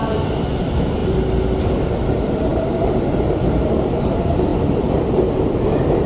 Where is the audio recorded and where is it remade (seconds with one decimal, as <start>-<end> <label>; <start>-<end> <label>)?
0.0-0.6 recorded; 0.6-1.0 remade; 1.0-1.6 recorded; 1.6-6.1 remade